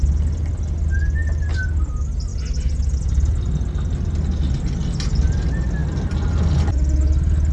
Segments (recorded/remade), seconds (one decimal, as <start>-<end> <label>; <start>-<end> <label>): 0.0-7.5 recorded

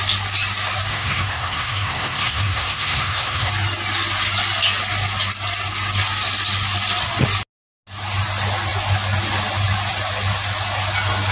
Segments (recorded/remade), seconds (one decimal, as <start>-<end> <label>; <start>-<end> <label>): 0.0-0.9 recorded; 0.9-3.5 remade; 3.5-11.3 recorded